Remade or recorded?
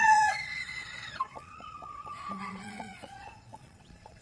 remade